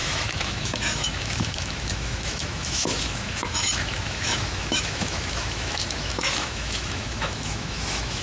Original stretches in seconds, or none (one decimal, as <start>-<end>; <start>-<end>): none